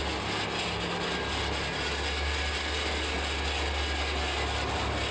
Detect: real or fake real